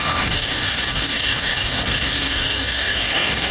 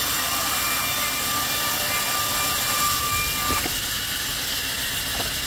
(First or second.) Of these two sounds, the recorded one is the second